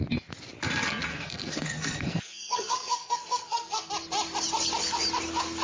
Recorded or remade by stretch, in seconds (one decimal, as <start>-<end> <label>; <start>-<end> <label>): 0.0-1.1 recorded; 1.1-3.9 remade; 3.9-5.6 recorded